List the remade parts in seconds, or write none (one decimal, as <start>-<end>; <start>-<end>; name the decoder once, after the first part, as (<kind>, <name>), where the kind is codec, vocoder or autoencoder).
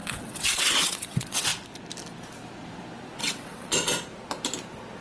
0.0-1.5 (vocoder, WaveNeXt); 3.2-3.9